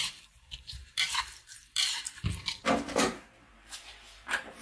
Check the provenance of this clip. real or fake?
fake